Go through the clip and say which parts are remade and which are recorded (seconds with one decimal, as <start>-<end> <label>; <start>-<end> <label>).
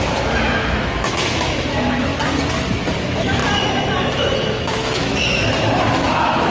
0.0-2.1 remade; 2.1-3.0 recorded; 3.0-3.4 remade; 3.4-4.1 recorded; 4.1-6.5 remade